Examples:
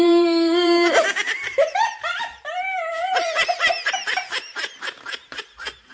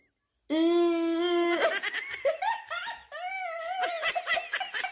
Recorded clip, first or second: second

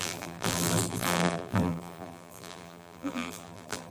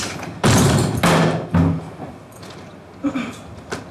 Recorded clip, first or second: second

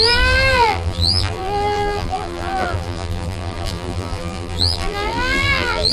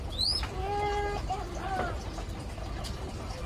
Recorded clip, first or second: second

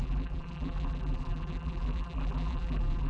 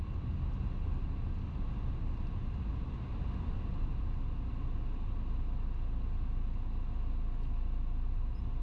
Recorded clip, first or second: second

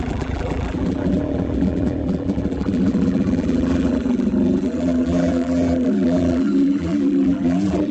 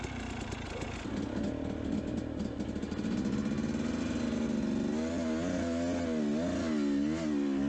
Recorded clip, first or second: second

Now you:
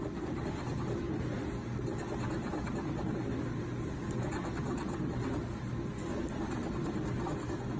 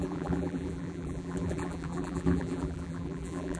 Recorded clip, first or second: first